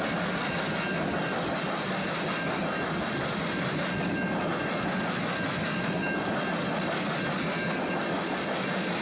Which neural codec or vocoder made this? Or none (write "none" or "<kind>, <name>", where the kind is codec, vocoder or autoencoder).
none